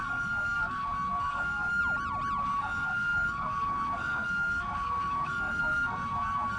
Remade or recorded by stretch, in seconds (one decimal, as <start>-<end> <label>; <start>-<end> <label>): 0.0-1.8 remade; 1.8-2.4 recorded; 2.4-6.6 remade